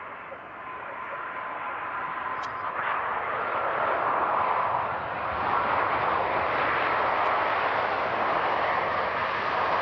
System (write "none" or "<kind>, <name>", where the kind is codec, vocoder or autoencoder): none